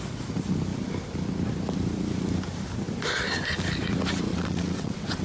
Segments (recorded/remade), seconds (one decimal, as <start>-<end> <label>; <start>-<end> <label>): 0.0-4.3 recorded; 4.3-5.2 remade